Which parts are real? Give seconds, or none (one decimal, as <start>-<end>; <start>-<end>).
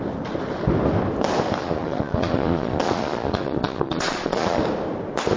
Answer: 0.0-1.6; 4.6-5.4